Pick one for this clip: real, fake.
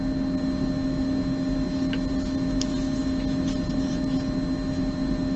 real